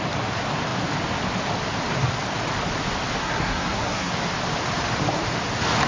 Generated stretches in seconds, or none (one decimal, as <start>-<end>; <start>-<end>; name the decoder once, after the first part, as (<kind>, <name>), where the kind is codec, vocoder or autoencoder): 3.2-4.1 (codec, SNAC)